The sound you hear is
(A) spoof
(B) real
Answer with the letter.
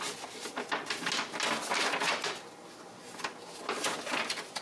B